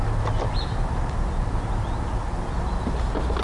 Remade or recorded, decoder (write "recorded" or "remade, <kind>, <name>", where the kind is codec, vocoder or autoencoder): recorded